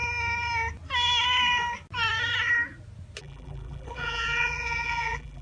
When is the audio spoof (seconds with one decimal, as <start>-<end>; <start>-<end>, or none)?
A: 3.2-5.4